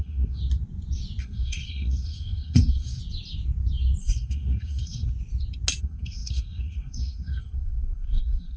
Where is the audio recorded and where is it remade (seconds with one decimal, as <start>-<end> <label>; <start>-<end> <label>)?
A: 0.0-0.4 remade; 0.4-1.2 recorded; 1.2-3.0 remade; 3.0-4.0 recorded; 4.0-5.1 remade; 5.1-5.8 recorded; 5.8-8.6 remade